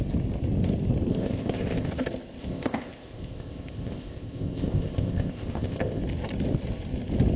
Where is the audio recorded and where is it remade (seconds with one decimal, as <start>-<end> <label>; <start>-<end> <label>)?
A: 0.0-1.1 recorded; 1.1-1.9 remade; 1.9-2.4 recorded; 2.4-6.0 remade; 6.0-7.4 recorded